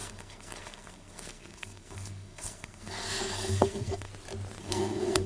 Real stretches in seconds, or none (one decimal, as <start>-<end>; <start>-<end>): 4.1-4.6